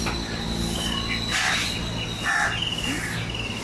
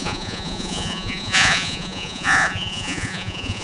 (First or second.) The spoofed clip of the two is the second